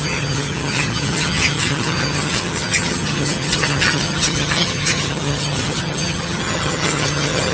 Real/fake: fake